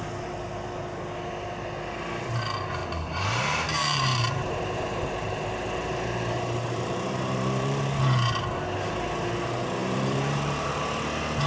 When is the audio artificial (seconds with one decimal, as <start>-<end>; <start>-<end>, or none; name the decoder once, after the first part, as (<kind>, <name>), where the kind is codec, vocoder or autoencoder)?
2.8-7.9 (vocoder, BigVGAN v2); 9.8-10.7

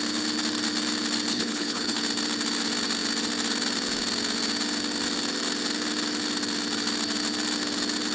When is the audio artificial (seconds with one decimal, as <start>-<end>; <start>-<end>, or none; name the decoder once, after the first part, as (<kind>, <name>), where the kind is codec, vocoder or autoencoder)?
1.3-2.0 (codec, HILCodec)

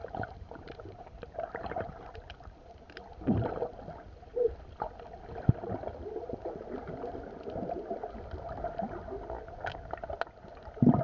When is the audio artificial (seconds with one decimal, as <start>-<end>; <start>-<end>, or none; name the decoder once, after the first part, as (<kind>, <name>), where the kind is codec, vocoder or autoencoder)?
0.0-2.8 (vocoder, BigVGAN v2)